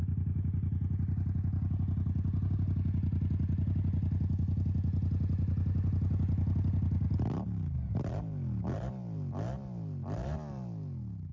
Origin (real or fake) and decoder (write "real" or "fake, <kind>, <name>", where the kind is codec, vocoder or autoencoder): real